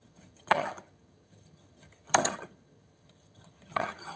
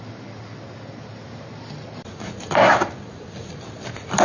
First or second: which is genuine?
second